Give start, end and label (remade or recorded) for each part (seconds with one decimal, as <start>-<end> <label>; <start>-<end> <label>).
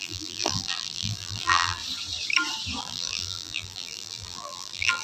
0.0-1.8 remade; 1.8-2.8 recorded; 2.8-5.0 remade